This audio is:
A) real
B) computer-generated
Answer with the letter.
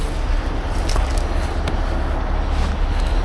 A